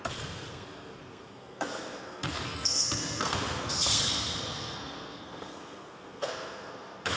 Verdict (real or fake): fake